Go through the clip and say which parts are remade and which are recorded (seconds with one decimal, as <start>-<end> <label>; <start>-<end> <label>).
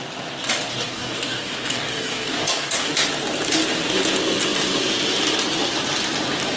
0.0-0.7 recorded; 0.7-2.9 remade; 2.9-6.6 recorded